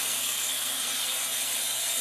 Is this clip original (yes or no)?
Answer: no